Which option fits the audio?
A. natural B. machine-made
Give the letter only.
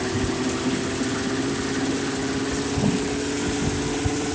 A